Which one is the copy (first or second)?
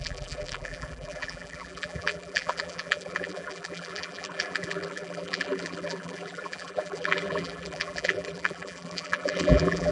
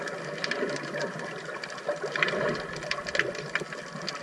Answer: first